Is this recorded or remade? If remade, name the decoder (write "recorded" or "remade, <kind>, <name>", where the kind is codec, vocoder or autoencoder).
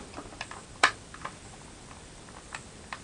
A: remade, vocoder, BigVGAN v2